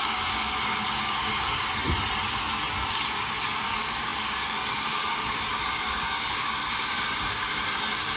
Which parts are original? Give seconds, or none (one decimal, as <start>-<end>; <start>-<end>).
1.8-2.9